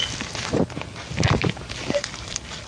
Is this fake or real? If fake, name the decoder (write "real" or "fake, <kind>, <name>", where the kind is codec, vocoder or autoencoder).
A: real